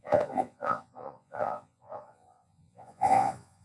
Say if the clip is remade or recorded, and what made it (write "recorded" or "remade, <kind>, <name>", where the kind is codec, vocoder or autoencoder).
remade, vocoder, Vocos